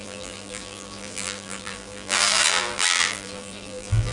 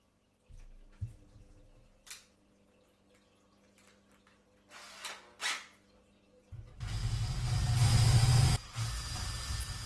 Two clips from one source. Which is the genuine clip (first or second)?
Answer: second